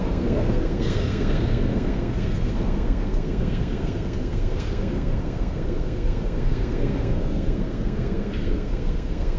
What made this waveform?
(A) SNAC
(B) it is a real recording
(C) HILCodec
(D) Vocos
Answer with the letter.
A